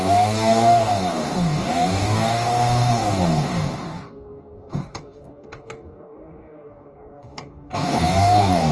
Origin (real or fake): fake